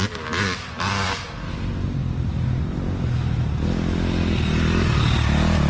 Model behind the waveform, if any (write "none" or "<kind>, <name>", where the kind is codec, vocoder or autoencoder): none